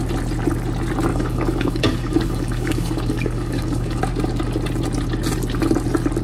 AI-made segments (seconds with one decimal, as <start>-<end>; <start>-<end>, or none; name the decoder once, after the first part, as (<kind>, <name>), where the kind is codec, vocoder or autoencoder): 1.1-4.0 (codec, DAC)